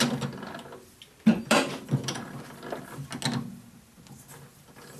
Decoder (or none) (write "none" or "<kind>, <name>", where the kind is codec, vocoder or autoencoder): none